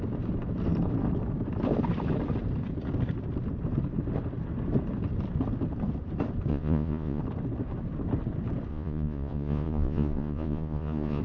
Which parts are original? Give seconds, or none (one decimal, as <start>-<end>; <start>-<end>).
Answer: 0.0-6.5; 7.2-8.7